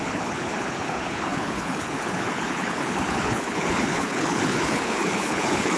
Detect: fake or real fake